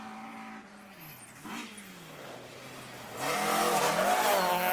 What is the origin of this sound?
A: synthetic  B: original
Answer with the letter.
B